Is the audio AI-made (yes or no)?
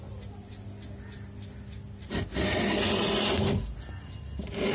no